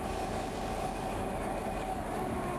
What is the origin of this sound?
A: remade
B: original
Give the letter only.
A